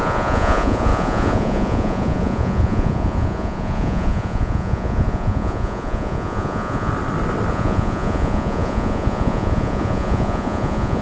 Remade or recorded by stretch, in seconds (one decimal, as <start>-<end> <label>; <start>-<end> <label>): 0.0-6.9 remade; 6.9-7.5 recorded; 7.5-11.0 remade